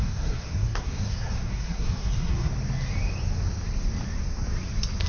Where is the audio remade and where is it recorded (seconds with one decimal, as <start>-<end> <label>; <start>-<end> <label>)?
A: 0.0-2.5 remade; 2.5-5.1 recorded